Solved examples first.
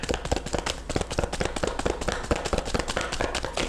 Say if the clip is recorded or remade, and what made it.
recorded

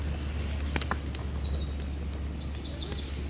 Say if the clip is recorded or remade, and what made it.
recorded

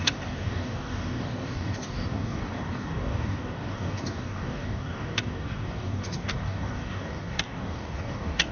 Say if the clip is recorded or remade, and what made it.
remade, codec, DAC